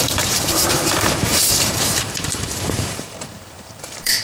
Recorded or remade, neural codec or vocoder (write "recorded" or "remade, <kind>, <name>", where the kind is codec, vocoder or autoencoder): remade, vocoder, BigVGAN v2